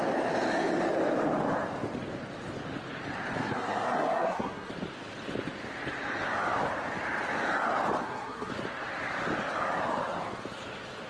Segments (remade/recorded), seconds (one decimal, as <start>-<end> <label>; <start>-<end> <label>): 0.0-3.4 recorded; 3.4-4.7 remade; 4.7-8.0 recorded; 8.0-8.5 remade; 8.5-11.1 recorded

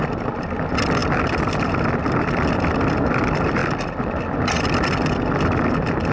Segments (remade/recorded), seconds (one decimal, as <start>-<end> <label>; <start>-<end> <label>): 0.0-6.1 recorded

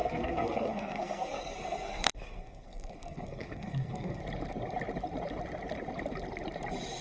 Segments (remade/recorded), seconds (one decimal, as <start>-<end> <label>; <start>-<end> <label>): 0.0-4.2 remade; 4.2-7.0 recorded

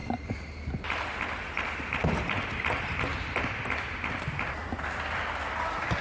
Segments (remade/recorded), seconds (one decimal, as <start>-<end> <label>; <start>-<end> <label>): 0.0-6.0 recorded

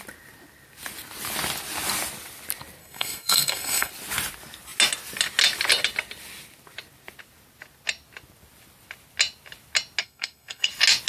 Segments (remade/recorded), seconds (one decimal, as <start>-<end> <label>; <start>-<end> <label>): 0.0-2.8 recorded; 2.8-3.9 remade; 3.9-10.0 recorded; 10.0-10.7 remade; 10.7-11.1 recorded